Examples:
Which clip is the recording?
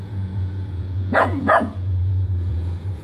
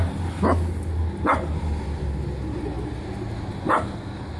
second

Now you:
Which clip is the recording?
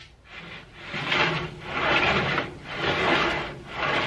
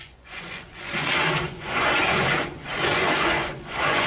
first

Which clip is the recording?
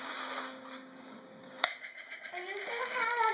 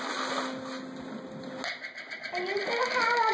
second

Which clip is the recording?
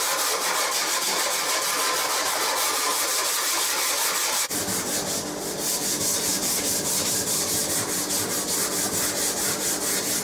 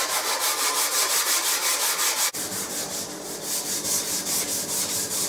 first